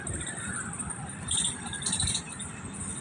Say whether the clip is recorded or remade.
remade